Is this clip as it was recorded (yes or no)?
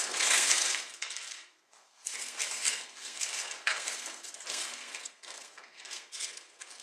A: no